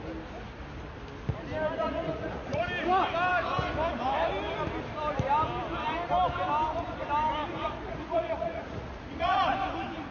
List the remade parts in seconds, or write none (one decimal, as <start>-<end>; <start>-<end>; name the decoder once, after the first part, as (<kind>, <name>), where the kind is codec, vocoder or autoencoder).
1.8-2.6 (vocoder, Vocos); 8.0-9.5